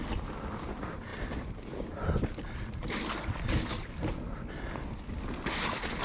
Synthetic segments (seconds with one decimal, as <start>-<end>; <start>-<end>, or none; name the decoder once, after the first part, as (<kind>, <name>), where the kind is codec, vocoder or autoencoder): none